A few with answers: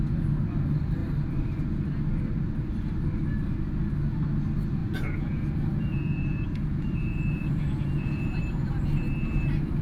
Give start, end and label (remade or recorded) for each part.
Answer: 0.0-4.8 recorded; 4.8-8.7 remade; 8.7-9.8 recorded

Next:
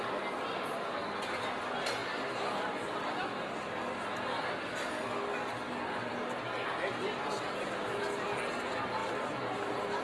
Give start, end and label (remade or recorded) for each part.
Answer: 0.0-10.0 recorded

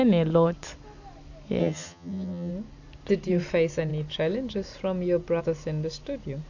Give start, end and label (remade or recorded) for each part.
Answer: 0.0-1.6 recorded; 1.6-2.5 remade; 2.5-6.5 recorded